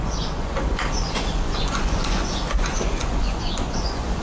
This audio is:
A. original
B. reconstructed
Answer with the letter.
B